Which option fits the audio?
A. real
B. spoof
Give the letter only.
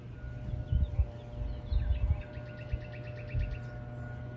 A